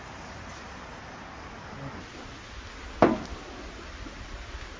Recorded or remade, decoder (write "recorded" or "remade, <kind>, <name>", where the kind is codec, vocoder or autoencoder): recorded